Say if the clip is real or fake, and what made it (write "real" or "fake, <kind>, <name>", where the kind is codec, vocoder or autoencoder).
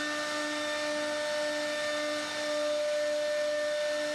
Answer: real